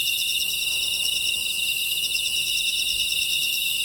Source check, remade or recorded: remade